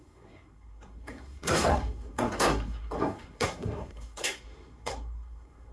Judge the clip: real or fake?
fake